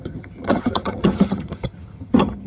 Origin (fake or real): fake